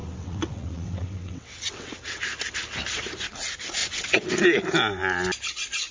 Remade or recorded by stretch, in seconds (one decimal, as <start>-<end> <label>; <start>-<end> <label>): 0.0-2.2 remade; 2.2-3.8 recorded; 3.8-4.3 remade; 4.3-5.9 recorded